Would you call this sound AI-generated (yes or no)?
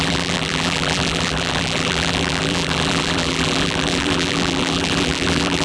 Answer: yes